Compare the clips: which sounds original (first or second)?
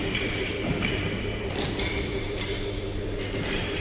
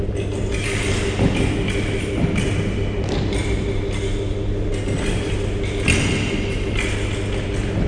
second